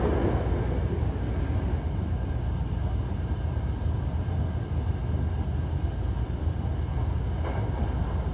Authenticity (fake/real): real